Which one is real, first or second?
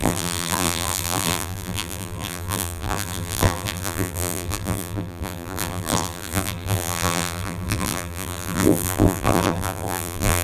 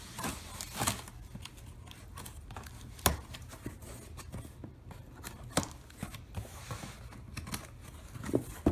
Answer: second